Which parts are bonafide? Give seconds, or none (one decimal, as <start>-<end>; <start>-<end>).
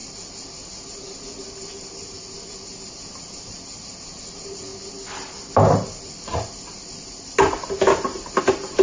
0.0-2.9; 4.7-8.4